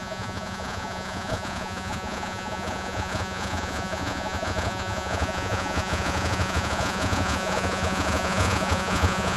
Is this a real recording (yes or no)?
no